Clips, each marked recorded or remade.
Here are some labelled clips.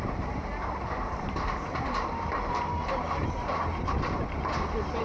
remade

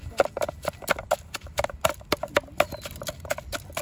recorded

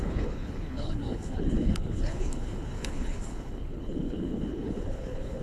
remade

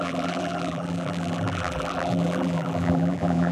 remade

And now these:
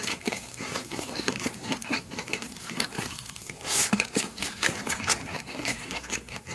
remade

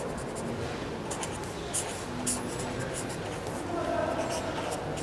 recorded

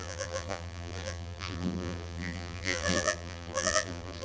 remade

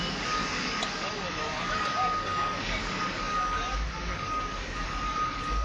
remade